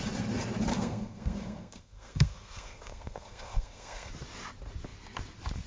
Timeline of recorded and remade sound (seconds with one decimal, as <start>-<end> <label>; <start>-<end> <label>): 0.0-0.7 recorded; 0.7-4.1 remade; 4.1-5.7 recorded